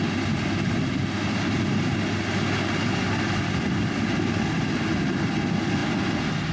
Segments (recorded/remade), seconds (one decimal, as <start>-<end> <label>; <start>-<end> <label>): 0.0-6.5 recorded